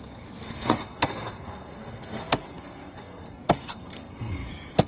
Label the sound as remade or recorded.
remade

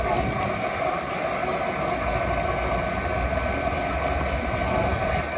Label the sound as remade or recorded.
recorded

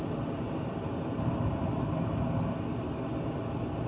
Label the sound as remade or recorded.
recorded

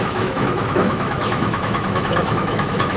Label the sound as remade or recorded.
remade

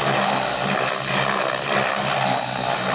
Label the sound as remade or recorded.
recorded